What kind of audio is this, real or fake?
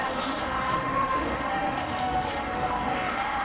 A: fake